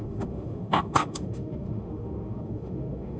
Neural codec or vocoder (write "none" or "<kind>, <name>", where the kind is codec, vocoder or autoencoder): autoencoder, DAC-VAE